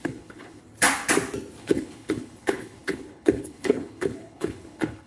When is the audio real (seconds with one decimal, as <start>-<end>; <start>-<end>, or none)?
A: 0.6-1.6